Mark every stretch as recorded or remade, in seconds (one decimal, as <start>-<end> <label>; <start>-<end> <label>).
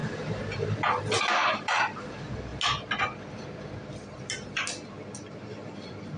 0.0-2.5 remade; 2.5-5.3 recorded; 5.3-6.2 remade